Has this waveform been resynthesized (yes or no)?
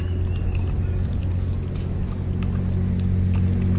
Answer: no